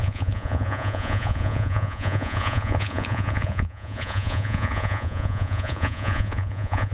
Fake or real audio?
fake